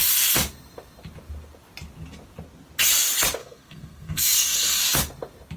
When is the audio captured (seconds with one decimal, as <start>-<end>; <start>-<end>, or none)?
0.0-3.4; 4.8-5.6